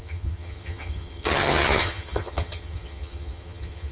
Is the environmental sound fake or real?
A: fake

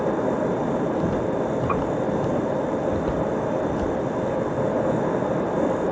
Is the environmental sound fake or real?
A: real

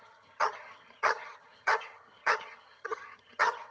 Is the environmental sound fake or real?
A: fake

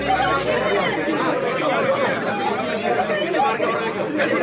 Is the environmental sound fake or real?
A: real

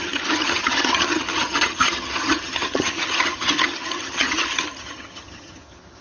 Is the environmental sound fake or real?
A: fake